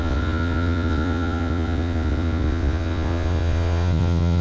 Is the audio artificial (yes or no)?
yes